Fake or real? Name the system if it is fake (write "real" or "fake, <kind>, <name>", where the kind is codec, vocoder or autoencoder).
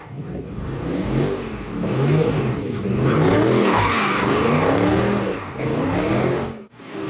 fake, codec, DAC